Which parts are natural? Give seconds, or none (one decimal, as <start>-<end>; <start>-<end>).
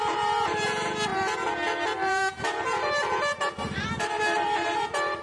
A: none